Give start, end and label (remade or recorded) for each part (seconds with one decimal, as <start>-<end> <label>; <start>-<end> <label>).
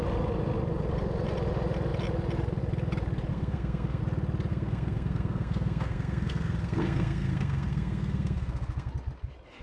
0.0-3.3 recorded; 3.3-4.0 remade; 4.0-4.5 recorded; 4.5-8.9 remade; 8.9-9.6 recorded